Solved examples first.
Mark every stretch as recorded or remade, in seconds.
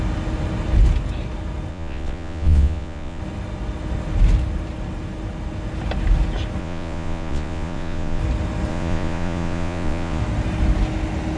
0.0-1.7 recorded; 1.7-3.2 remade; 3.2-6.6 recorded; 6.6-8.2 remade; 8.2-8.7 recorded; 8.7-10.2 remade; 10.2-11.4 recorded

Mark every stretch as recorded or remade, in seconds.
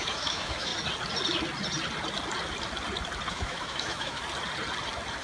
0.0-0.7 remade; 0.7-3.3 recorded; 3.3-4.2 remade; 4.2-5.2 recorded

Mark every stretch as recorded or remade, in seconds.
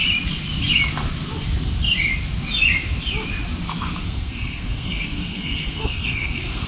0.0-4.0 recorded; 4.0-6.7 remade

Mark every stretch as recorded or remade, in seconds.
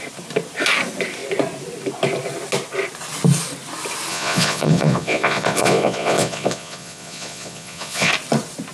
0.0-4.1 recorded; 4.1-8.1 remade; 8.1-8.7 recorded